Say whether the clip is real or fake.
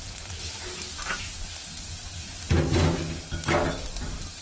real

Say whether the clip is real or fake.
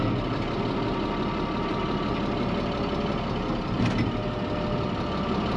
real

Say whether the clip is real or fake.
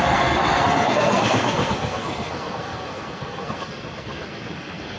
fake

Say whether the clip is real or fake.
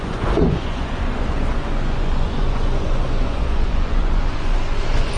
fake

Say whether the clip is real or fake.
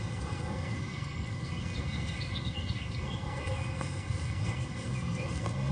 fake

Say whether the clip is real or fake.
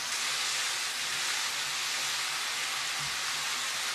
real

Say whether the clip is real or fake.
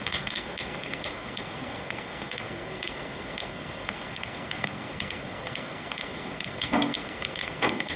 fake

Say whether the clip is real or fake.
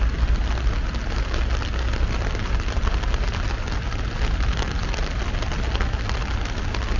real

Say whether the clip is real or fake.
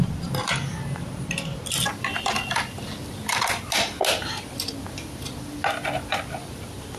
real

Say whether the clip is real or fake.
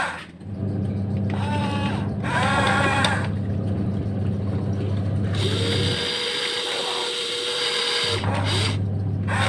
fake